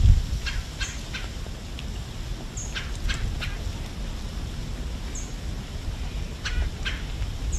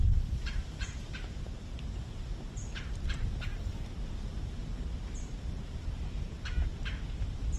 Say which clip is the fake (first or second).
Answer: second